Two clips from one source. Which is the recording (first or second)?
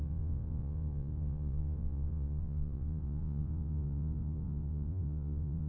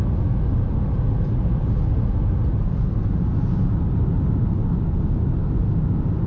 second